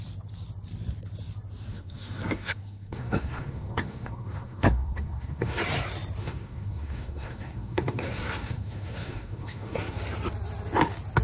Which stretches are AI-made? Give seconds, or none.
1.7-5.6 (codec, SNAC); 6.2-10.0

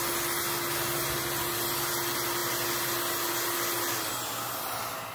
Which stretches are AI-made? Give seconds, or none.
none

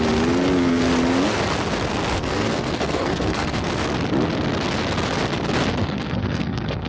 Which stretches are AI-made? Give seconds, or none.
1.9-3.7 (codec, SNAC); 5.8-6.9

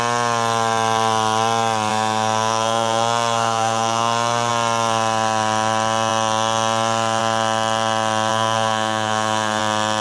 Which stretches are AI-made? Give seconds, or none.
1.9-4.5 (codec, SNAC); 8.3-9.6

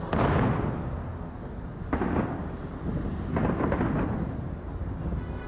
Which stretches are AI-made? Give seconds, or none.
none

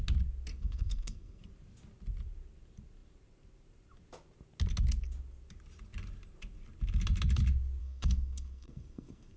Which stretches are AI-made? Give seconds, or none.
0.5-1.5 (codec, SNAC); 7.8-9.4

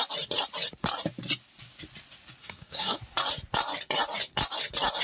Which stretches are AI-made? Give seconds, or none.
2.4-3.0 (codec, SNAC)

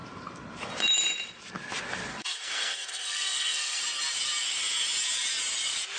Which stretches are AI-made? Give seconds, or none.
2.1-3.8 (codec, SNAC)